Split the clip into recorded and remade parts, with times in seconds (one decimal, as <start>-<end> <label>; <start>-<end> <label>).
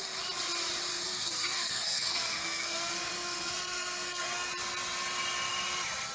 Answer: 0.0-0.9 recorded; 0.9-4.5 remade; 4.5-6.1 recorded